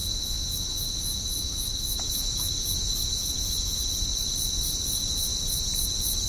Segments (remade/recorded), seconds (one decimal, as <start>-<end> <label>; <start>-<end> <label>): 0.0-3.8 remade; 3.8-6.3 recorded